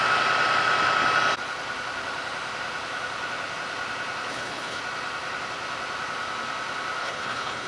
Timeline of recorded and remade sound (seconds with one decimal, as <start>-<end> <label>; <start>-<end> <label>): 0.0-4.3 recorded; 4.3-4.8 remade; 4.8-7.0 recorded; 7.0-7.7 remade